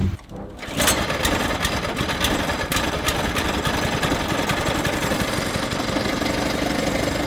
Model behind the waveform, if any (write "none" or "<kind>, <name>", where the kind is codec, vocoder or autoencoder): vocoder, BigVGAN v2